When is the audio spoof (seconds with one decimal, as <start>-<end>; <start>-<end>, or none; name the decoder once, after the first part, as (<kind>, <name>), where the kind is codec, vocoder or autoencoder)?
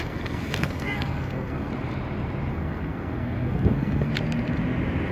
0.0-1.7 (codec, SNAC); 2.5-4.1